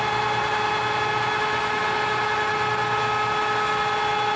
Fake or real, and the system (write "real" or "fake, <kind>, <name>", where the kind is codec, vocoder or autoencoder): real